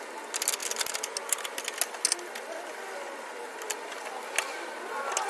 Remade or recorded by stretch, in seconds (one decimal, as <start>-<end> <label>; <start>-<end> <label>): 0.0-5.3 recorded